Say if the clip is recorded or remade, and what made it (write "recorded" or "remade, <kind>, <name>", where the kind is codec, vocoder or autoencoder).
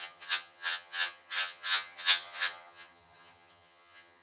remade, vocoder, HiFi-GAN